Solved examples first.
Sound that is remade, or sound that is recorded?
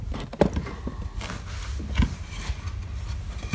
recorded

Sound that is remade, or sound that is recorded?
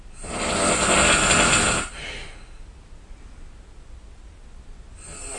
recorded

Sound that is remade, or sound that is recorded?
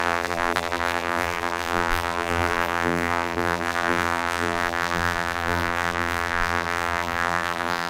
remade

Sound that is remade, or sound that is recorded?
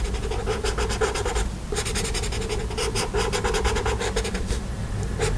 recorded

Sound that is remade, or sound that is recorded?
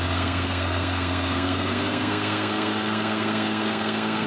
remade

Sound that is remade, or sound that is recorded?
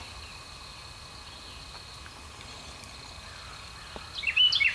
recorded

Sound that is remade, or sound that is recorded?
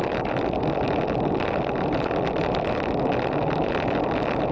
recorded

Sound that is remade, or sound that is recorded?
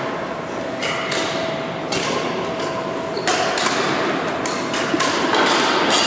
recorded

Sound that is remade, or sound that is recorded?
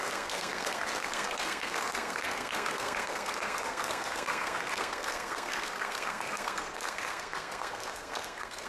remade